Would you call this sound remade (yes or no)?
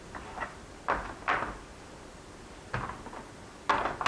no